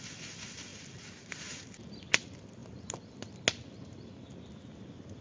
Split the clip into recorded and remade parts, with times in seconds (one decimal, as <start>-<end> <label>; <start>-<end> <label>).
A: 0.0-5.2 recorded